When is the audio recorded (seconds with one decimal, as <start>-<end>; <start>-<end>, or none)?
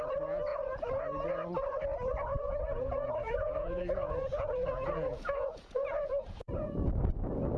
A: 0.0-0.5; 1.0-2.3; 6.9-7.6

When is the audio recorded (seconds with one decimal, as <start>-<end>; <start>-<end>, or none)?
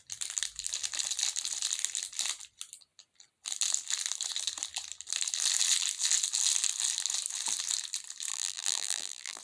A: 0.0-8.3